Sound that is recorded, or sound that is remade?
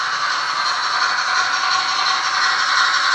recorded